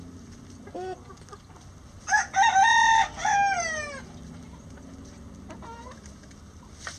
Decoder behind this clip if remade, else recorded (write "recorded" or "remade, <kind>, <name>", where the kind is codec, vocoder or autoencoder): recorded